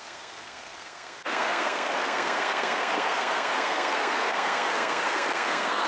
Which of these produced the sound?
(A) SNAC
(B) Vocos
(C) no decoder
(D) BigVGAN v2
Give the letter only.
A